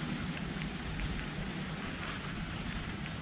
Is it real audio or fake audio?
real